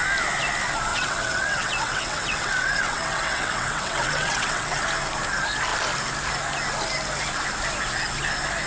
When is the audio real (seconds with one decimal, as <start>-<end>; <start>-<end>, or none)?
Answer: 0.0-0.9; 4.8-8.7